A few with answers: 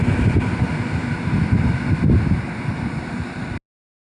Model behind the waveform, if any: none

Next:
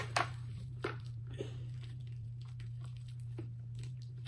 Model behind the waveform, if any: vocoder, BigVGAN v2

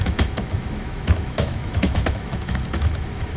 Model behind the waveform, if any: autoencoder, DAC-VAE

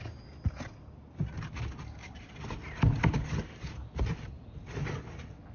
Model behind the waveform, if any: none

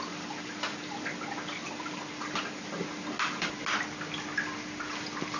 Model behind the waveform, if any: none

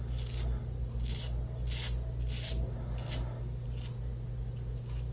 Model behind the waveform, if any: none